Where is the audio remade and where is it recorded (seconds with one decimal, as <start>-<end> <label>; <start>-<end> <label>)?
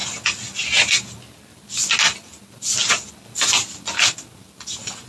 0.0-5.1 recorded